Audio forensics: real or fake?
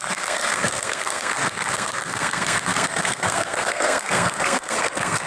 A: fake